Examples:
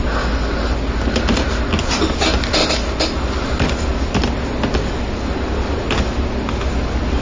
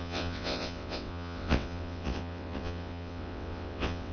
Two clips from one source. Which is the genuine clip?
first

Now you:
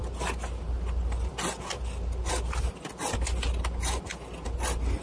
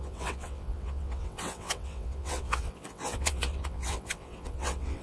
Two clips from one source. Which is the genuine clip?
first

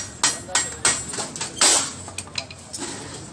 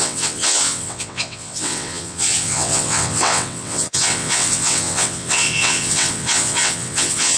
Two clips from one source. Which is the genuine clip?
first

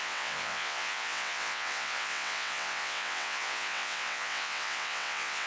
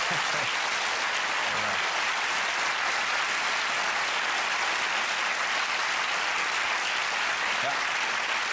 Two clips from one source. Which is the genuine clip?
second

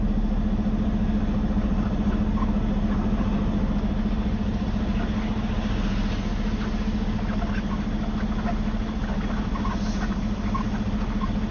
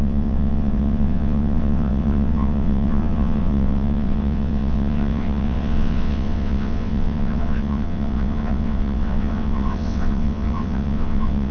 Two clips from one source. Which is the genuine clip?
first